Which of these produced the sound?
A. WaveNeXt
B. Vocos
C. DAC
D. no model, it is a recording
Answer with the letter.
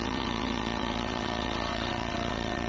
A